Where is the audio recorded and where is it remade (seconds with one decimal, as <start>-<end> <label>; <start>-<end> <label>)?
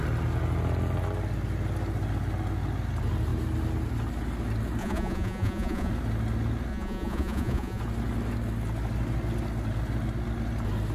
0.0-4.8 recorded; 4.8-5.9 remade; 5.9-6.7 recorded; 6.7-7.8 remade; 7.8-10.9 recorded